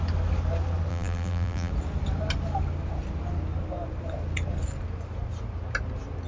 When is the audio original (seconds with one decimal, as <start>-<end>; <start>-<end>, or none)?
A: 0.0-0.9; 1.7-6.3